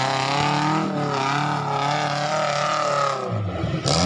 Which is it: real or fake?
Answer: real